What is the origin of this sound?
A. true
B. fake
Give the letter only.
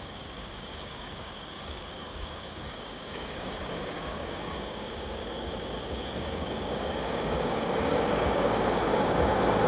B